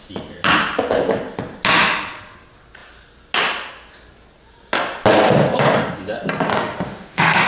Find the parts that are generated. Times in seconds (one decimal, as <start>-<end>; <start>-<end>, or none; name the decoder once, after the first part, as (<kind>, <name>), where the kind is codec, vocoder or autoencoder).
6.5-7.5 (autoencoder, DAC-VAE)